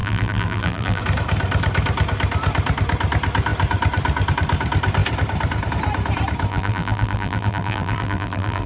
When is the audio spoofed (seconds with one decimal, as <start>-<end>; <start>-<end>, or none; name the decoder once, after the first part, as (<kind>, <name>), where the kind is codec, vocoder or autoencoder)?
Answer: 0.0-1.0 (vocoder, BigVGAN v2); 6.5-8.7